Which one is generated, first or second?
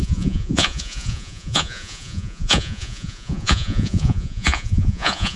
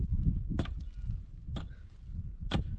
first